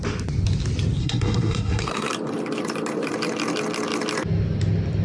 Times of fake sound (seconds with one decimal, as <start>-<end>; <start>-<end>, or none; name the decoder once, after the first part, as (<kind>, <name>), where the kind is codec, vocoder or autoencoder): 1.0-2.1 (codec, SNAC)